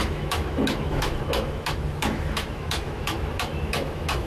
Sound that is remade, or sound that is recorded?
remade